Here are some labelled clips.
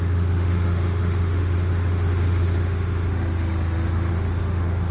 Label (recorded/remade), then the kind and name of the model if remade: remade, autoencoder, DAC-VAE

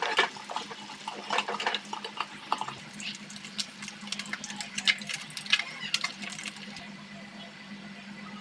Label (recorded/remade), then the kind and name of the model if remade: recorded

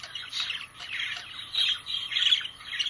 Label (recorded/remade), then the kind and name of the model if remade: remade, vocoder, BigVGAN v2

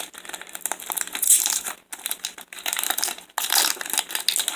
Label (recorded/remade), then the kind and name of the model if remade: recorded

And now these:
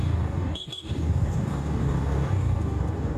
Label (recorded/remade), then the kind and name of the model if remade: remade, codec, DAC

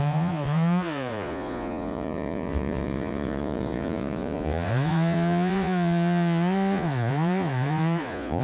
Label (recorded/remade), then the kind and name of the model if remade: remade, vocoder, Vocos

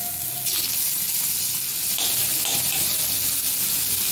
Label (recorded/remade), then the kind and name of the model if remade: recorded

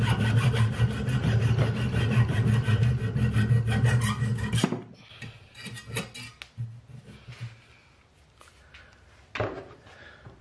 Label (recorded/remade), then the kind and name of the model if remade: recorded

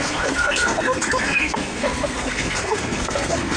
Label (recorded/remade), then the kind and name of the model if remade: remade, codec, SNAC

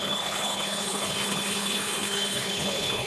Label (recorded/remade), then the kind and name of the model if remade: remade, codec, HILCodec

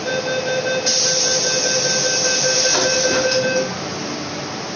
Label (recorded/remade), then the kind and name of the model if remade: recorded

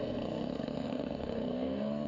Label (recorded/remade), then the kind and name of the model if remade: remade, codec, SNAC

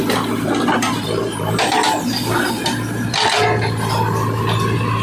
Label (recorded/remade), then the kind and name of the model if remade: recorded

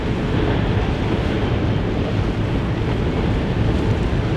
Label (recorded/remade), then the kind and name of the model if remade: recorded